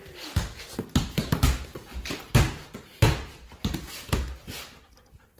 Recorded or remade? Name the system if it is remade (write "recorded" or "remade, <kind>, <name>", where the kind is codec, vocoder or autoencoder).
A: recorded